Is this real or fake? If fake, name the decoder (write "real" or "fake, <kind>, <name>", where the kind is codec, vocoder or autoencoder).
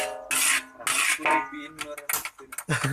real